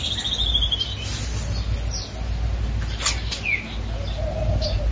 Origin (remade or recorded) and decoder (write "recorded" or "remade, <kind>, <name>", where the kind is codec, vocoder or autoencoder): recorded